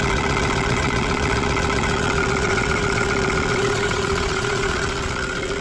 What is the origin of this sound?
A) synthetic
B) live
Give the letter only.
A